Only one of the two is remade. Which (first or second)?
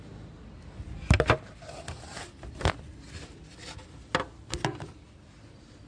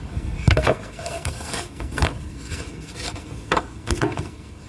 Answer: second